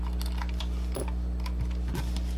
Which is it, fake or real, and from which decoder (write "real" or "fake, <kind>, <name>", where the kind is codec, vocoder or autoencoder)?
real